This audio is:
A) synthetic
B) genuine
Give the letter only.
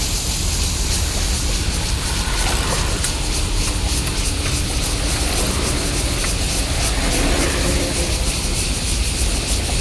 B